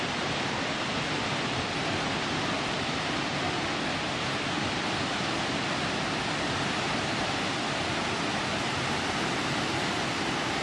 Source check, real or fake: real